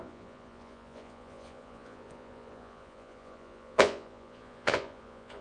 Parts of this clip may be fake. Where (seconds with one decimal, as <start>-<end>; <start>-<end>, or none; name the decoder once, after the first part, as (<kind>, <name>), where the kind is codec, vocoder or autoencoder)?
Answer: 0.0-5.4 (vocoder, Vocos)